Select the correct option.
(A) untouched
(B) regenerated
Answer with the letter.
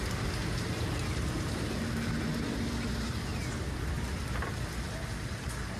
A